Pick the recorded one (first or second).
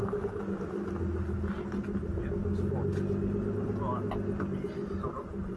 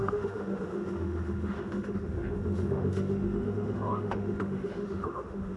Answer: first